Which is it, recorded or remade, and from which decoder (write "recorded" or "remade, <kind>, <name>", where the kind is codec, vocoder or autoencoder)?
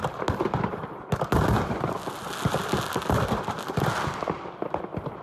recorded